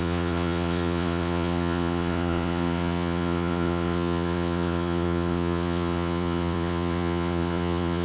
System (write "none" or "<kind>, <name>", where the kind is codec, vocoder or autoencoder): vocoder, Vocos